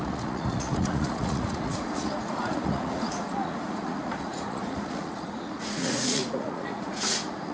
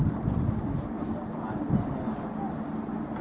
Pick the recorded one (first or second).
second